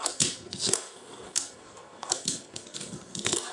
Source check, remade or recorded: remade